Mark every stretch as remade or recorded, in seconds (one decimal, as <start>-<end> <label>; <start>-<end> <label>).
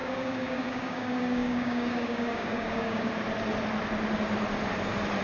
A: 0.0-3.1 remade; 3.1-5.2 recorded